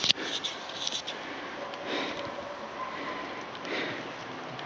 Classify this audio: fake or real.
real